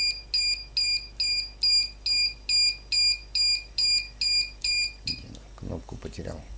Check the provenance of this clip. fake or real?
real